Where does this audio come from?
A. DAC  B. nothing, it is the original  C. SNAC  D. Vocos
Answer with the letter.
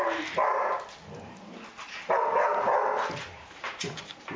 B